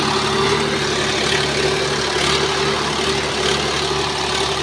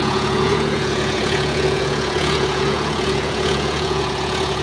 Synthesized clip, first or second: second